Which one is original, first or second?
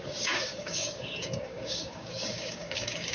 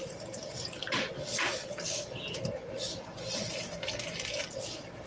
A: second